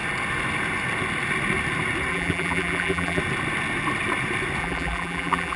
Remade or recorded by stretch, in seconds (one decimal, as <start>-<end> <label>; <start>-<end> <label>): 0.0-2.1 recorded; 2.1-3.2 remade; 3.2-4.6 recorded; 4.6-5.6 remade